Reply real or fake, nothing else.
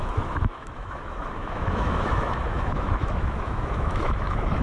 fake